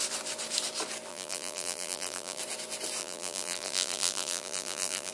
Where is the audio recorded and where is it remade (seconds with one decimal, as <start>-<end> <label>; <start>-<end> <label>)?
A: 0.0-1.1 recorded; 1.1-2.4 remade; 2.4-3.0 recorded; 3.0-5.1 remade